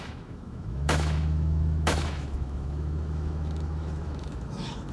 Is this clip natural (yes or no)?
no